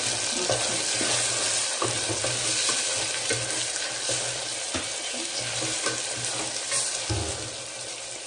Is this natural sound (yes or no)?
yes